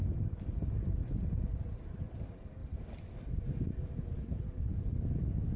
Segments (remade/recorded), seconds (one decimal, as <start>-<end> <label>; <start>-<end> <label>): 0.0-5.6 recorded

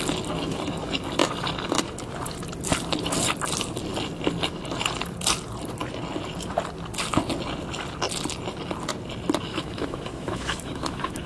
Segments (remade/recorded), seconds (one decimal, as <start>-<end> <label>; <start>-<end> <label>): 0.0-9.5 recorded; 9.5-11.3 remade

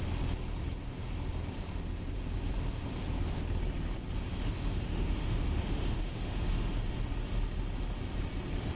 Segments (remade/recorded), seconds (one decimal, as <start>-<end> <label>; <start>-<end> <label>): 0.0-4.3 recorded; 4.3-6.7 remade; 6.7-8.8 recorded

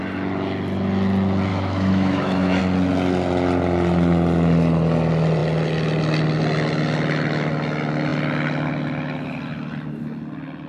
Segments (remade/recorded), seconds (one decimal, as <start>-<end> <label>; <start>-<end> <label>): 0.0-1.5 recorded; 1.5-2.6 remade; 2.6-10.7 recorded